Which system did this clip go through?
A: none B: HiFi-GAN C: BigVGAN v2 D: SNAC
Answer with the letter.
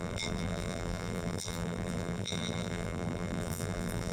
C